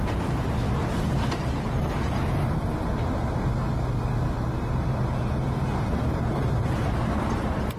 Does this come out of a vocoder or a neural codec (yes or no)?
yes